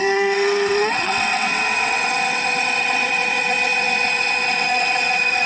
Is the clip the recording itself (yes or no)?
no